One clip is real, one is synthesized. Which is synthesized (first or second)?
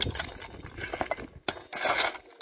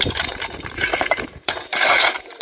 second